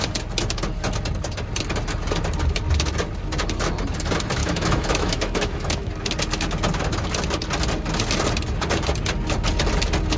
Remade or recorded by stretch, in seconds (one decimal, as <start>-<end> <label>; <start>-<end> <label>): 0.0-4.4 recorded; 4.4-5.9 remade; 5.9-10.2 recorded

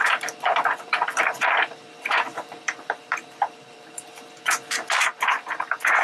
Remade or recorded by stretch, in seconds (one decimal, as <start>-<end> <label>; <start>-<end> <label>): 0.0-6.0 remade

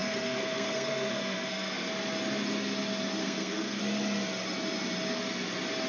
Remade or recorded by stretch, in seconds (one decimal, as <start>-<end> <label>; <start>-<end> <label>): 0.0-1.9 remade; 1.9-3.2 recorded; 3.2-3.8 remade; 3.8-5.9 recorded